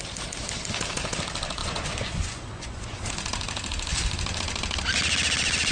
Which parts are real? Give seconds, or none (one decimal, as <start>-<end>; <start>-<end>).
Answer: 0.0-1.6; 3.0-5.7